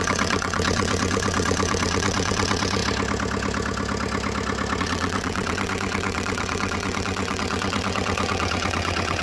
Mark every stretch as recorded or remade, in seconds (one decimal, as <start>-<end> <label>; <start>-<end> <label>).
0.0-2.8 remade; 2.8-4.8 recorded; 4.8-9.2 remade